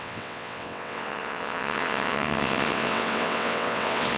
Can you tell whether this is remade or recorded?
remade